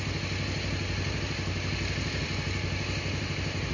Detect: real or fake real